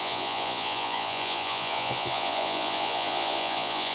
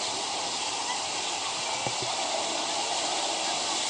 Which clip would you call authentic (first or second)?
second